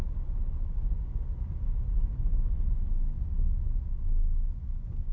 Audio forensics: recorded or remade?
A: recorded